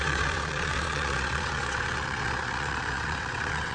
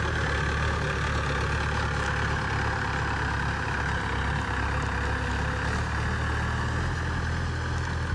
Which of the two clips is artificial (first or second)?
first